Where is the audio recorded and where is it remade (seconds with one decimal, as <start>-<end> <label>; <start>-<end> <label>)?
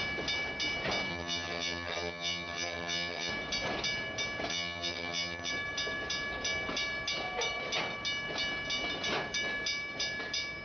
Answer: 0.0-1.1 recorded; 1.1-3.3 remade; 3.3-4.5 recorded; 4.5-5.5 remade; 5.5-10.6 recorded